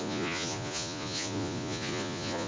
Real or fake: fake